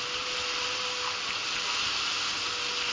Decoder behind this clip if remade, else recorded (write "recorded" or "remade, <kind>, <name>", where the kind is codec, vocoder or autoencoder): recorded